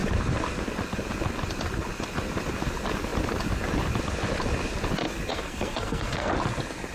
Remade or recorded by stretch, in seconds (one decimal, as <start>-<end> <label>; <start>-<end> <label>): 0.0-5.3 recorded; 5.3-6.3 remade; 6.3-6.9 recorded